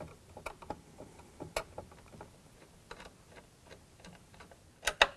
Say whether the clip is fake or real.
real